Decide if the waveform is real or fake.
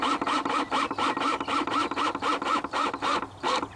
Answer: real